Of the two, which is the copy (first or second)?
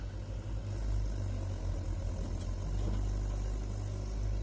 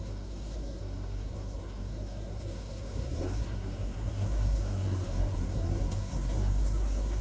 second